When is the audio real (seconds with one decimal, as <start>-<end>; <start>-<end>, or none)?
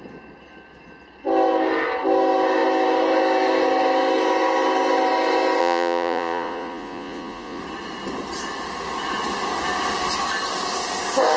0.0-5.6; 7.6-11.4